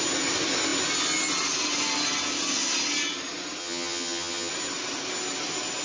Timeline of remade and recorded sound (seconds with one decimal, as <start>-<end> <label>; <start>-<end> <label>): 0.0-3.6 recorded; 3.6-4.5 remade; 4.5-5.8 recorded